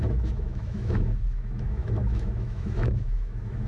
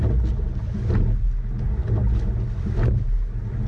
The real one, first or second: second